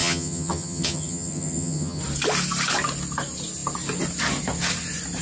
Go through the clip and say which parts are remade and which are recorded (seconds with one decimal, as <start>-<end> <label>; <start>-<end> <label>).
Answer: 0.0-2.0 remade; 2.0-5.2 recorded